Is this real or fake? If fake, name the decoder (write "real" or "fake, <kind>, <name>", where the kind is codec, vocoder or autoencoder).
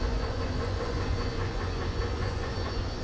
fake, vocoder, Vocos